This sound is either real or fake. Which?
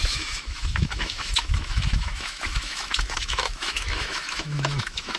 fake